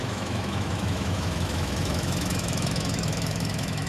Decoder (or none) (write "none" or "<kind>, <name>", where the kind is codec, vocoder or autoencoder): autoencoder, DAC-VAE